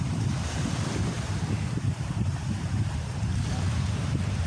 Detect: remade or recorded remade